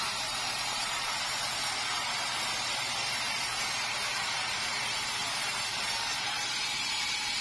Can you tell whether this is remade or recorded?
remade